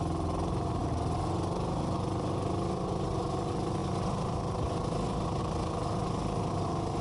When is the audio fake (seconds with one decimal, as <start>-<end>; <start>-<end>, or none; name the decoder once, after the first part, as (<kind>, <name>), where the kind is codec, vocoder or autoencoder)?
none

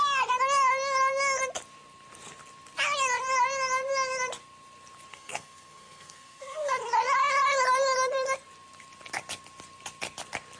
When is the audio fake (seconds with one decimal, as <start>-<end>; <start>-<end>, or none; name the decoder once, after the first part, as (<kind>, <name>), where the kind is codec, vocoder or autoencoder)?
5.1-6.7 (codec, SNAC)

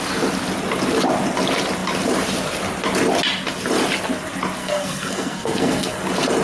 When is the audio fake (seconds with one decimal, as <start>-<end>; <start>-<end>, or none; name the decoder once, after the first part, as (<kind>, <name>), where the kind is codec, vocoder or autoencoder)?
4.6-6.0 (codec, SNAC)